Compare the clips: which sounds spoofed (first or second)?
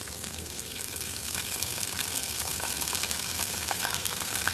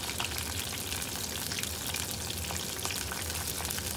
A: first